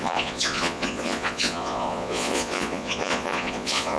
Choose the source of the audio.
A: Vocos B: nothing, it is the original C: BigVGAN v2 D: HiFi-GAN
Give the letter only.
A